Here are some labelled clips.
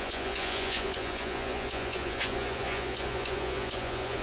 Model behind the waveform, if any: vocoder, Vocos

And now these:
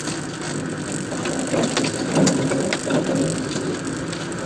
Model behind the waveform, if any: none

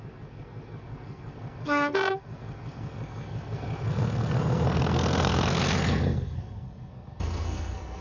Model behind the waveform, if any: codec, SNAC